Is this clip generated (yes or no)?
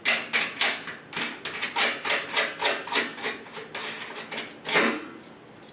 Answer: no